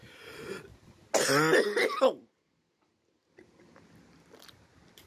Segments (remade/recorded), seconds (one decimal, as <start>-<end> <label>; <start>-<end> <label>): 0.0-5.1 recorded